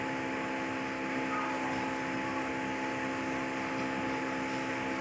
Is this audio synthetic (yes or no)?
no